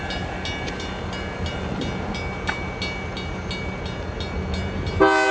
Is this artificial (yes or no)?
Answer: no